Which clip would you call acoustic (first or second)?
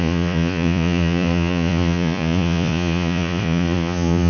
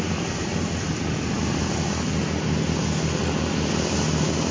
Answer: second